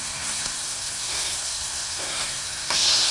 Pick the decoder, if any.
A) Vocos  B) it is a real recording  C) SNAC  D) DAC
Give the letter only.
C